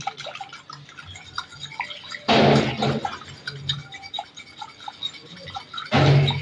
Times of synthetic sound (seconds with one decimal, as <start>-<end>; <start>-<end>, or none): none